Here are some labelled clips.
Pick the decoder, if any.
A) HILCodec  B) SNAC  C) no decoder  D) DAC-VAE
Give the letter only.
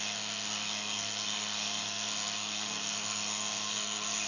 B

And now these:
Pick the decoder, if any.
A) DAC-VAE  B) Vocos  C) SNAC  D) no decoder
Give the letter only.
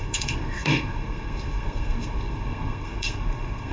C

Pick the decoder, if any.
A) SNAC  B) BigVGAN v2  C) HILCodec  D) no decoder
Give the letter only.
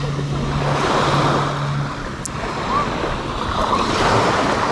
D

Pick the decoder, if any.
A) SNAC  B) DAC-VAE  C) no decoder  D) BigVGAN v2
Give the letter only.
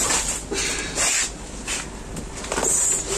C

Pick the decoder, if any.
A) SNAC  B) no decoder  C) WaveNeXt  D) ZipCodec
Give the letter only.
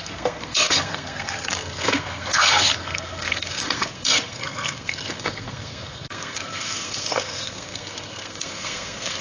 A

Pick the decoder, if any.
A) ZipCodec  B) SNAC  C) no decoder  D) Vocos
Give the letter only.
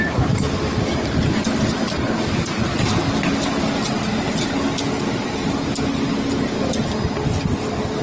C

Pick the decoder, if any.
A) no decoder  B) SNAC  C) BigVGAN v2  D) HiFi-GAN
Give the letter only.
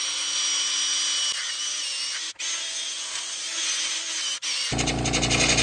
A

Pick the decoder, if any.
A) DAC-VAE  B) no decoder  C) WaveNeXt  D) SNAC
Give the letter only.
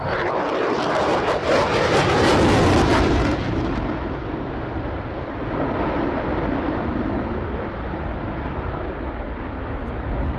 B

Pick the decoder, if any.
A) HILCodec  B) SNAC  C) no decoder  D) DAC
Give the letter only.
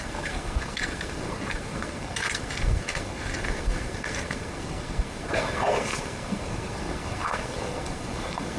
B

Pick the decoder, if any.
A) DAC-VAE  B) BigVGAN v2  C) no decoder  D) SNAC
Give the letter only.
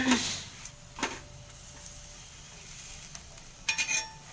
C